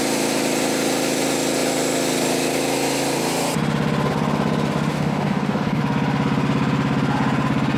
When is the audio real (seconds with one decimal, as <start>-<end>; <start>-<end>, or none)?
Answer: 0.0-4.9; 5.8-7.8